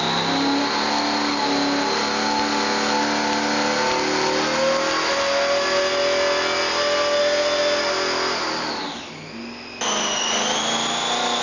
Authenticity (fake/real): real